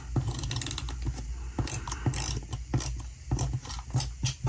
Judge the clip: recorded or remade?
recorded